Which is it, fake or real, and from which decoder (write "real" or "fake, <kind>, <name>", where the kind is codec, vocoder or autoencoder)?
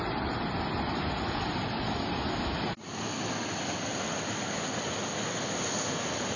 real